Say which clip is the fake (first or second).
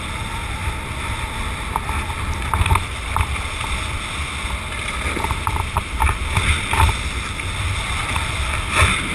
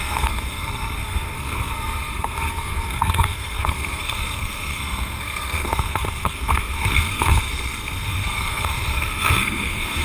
second